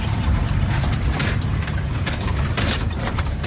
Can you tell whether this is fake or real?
fake